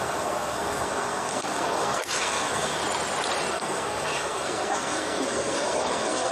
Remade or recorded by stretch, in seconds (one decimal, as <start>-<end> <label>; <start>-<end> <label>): 0.0-2.8 remade; 2.8-3.5 recorded; 3.5-6.3 remade